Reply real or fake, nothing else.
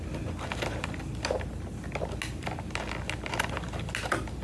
real